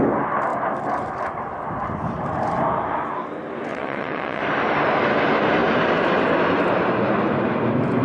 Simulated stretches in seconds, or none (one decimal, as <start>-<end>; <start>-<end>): 3.7-4.4